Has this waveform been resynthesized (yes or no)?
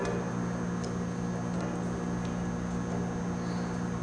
no